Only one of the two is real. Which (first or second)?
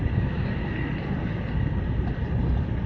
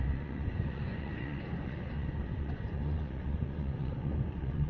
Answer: first